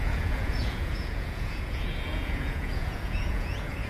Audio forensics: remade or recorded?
remade